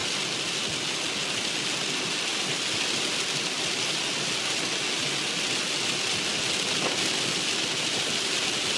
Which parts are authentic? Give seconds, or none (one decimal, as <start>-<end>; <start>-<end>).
0.0-8.8

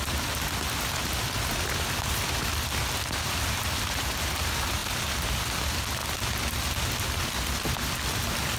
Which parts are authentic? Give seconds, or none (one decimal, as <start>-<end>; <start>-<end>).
0.0-8.6

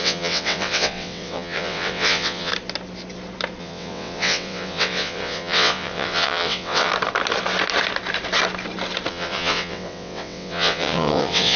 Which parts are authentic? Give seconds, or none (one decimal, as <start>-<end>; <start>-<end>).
2.5-3.6; 6.9-9.1

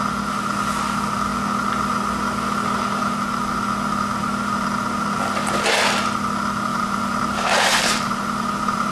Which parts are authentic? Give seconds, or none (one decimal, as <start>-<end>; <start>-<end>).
0.0-6.7

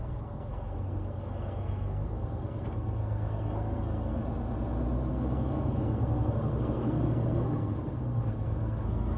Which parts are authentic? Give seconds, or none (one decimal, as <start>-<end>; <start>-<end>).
4.2-5.1